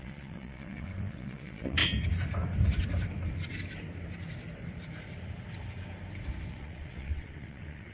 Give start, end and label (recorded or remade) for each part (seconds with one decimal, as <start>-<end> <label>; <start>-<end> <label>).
0.0-1.8 remade; 1.8-6.5 recorded; 6.5-7.9 remade